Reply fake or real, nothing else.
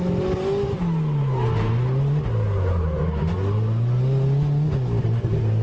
real